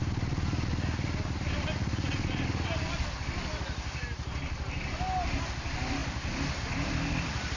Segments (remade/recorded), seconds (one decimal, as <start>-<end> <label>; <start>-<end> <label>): 0.0-7.6 recorded